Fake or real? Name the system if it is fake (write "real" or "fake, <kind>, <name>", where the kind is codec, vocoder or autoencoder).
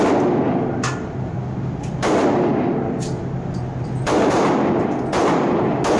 real